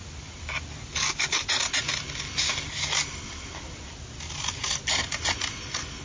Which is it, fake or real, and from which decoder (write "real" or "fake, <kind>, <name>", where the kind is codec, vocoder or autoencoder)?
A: real